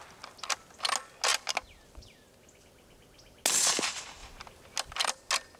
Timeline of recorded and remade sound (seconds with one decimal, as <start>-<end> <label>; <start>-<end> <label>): 0.0-5.6 recorded